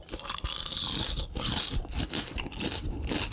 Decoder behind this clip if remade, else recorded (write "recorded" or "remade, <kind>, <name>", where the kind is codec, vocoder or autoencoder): remade, vocoder, BigVGAN v2